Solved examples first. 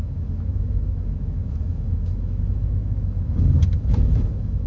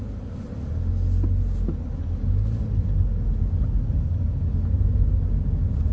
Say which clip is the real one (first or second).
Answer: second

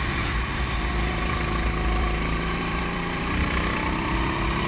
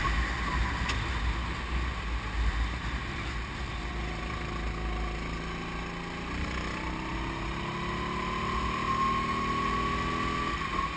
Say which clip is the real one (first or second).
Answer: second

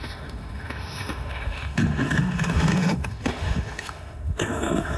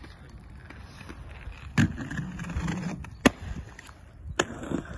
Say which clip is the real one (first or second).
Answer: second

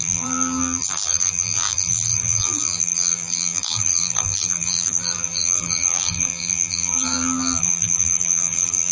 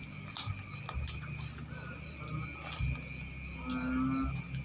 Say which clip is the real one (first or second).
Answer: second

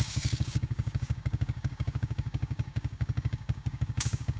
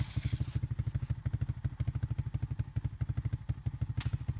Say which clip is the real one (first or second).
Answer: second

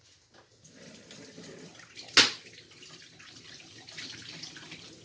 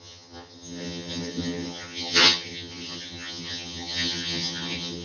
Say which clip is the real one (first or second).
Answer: first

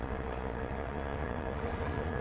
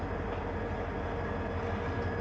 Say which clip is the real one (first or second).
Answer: second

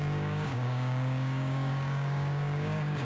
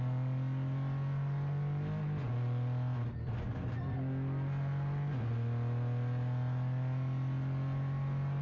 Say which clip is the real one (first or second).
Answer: second